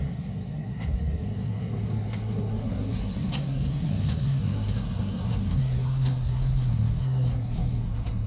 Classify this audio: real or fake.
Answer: fake